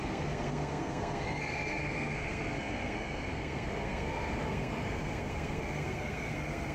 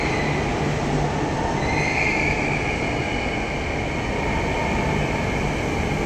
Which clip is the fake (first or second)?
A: first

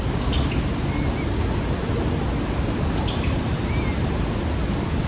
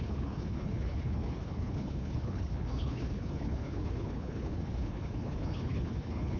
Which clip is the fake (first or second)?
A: second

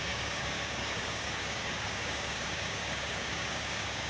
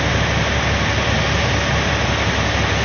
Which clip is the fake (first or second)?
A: first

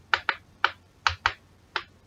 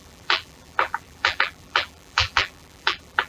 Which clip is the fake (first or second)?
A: second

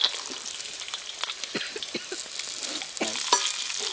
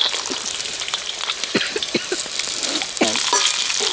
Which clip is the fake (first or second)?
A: second